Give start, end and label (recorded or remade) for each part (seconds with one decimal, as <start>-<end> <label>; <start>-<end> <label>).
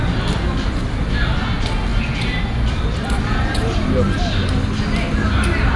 0.0-5.8 recorded